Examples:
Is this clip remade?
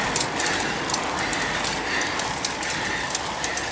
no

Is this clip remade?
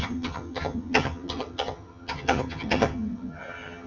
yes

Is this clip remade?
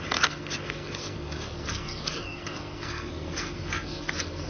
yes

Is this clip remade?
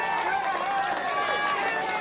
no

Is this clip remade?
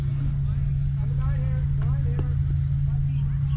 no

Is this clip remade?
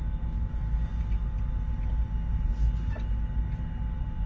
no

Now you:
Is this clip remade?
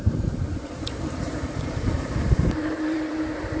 yes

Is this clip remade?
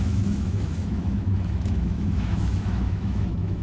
yes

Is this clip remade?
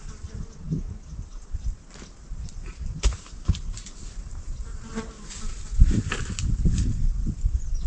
no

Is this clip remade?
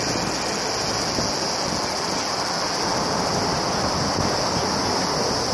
no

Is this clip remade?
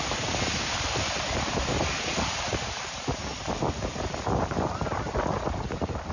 no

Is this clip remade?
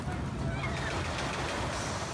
no